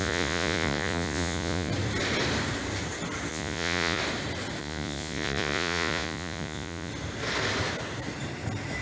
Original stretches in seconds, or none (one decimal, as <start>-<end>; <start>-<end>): 1.7-3.3; 4.0-4.6; 6.9-8.8